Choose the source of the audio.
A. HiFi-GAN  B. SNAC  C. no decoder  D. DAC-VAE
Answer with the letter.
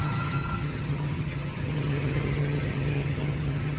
A